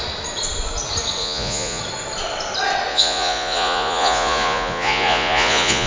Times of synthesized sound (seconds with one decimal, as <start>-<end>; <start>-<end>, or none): 1.2-1.8; 2.9-5.9